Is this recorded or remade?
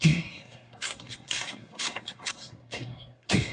remade